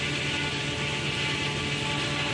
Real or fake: real